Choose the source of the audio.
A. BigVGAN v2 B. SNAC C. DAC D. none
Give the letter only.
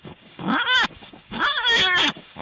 C